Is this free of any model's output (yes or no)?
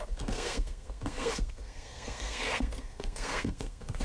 no